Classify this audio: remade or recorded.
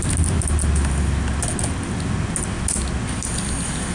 recorded